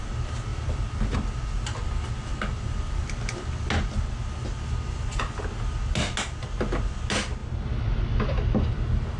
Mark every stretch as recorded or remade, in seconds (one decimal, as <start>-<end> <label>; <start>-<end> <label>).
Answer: 0.0-9.2 recorded